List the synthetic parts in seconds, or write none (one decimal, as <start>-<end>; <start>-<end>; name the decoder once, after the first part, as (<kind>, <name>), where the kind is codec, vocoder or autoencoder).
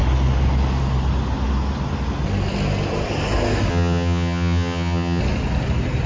3.7-5.2 (vocoder, HiFi-GAN)